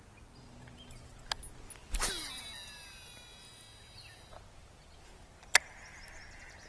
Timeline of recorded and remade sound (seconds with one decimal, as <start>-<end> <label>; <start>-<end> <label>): 0.0-6.7 recorded